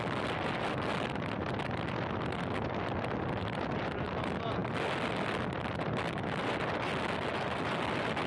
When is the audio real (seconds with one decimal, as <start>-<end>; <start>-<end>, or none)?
0.0-8.3